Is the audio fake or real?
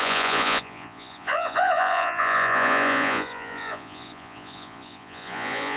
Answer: fake